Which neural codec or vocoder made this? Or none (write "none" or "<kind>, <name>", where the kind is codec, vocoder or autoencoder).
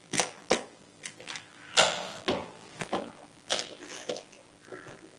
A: vocoder, BigVGAN v2